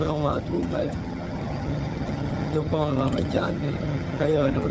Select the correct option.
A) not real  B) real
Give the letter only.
A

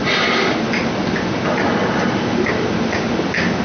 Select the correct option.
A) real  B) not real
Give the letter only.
A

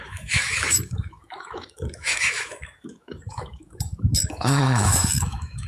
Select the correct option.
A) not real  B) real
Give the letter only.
A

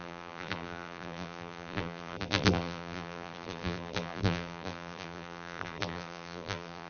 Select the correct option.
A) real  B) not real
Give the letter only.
B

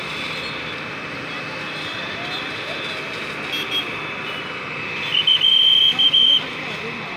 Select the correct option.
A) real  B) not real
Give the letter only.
A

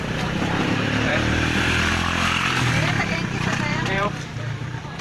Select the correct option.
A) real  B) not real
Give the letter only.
B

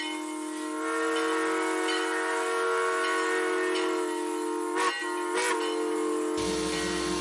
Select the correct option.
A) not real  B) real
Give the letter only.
B